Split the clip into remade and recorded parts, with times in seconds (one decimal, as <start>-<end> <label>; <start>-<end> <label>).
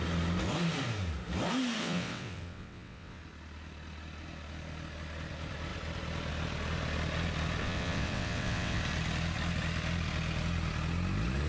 0.0-1.8 recorded; 1.8-3.2 remade; 3.2-7.6 recorded; 7.6-8.8 remade; 8.8-11.5 recorded